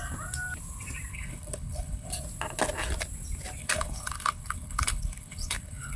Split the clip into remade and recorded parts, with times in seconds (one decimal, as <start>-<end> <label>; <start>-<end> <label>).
0.0-1.1 recorded; 1.1-2.1 remade; 2.1-3.6 recorded; 3.6-6.0 remade